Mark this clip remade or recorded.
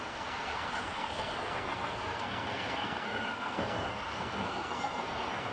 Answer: remade